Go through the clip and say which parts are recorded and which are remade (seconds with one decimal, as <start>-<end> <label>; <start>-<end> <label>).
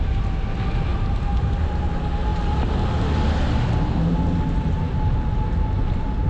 0.0-6.3 recorded